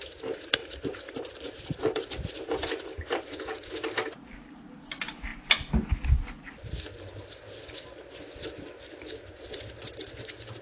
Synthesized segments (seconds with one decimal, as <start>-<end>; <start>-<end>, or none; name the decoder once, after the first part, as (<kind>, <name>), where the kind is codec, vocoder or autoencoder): 0.6-3.3 (vocoder, BigVGAN v2)